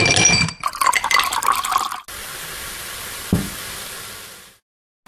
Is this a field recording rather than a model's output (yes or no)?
yes